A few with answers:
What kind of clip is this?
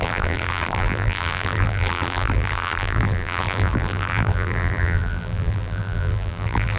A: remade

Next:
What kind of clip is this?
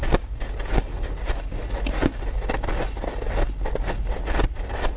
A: recorded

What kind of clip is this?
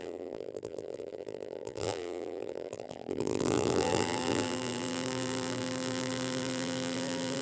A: remade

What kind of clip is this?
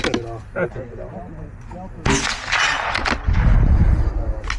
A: recorded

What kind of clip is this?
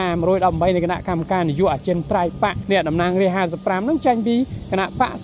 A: recorded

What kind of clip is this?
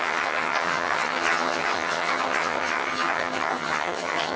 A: remade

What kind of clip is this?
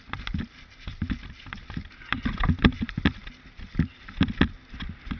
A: recorded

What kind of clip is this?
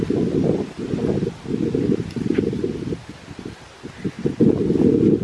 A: recorded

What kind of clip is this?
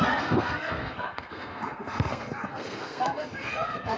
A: remade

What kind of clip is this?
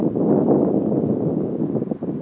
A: recorded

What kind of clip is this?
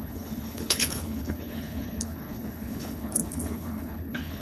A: remade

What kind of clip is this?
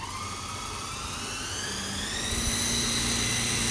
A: recorded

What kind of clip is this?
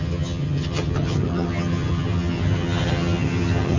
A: remade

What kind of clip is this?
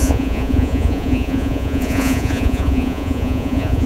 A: remade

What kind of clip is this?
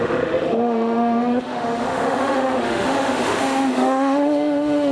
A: remade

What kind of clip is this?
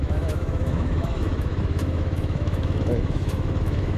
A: remade